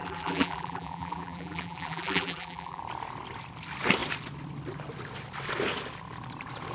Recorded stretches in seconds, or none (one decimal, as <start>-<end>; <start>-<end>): 2.8-6.7